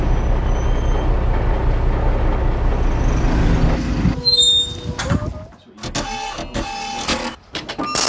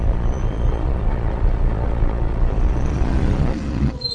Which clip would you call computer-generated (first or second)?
second